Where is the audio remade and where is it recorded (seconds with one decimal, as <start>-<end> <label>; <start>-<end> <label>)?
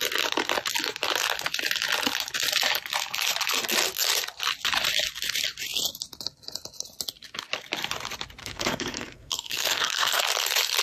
0.0-8.4 recorded; 8.4-10.2 remade; 10.2-10.8 recorded